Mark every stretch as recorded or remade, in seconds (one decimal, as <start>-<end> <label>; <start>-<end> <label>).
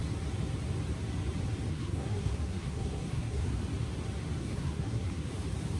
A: 0.0-1.7 recorded; 1.7-3.5 remade; 3.5-4.4 recorded; 4.4-5.3 remade; 5.3-5.8 recorded